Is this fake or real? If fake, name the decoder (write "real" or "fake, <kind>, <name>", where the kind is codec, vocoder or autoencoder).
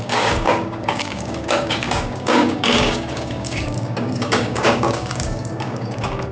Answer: fake, codec, DAC